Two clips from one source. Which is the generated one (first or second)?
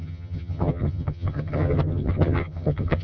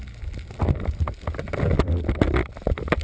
first